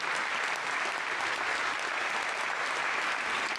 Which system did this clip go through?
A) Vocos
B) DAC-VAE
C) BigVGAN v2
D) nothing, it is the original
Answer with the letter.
D